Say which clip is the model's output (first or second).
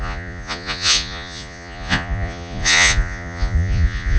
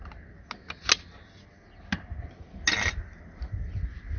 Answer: first